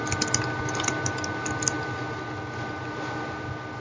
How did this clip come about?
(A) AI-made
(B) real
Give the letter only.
B